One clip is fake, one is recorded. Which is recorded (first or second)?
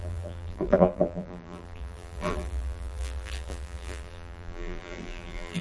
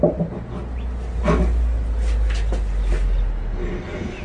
second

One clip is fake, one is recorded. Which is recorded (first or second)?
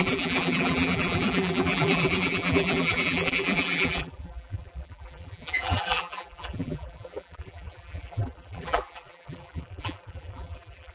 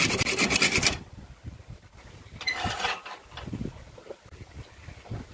second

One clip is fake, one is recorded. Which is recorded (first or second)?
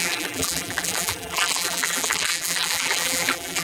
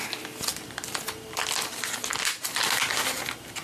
second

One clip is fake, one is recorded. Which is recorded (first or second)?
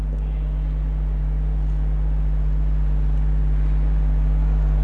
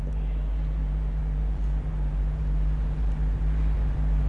first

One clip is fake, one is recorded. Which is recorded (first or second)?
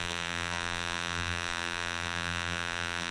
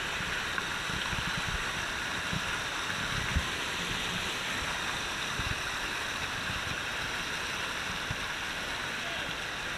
second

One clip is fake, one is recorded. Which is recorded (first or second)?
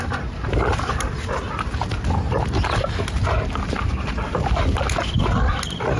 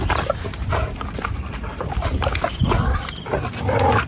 first